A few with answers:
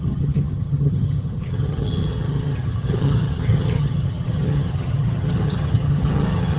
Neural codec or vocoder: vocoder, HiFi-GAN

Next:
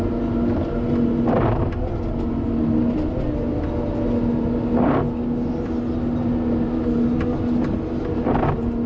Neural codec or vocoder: none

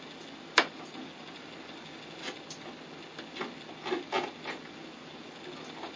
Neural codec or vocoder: none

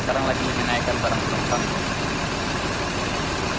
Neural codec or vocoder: none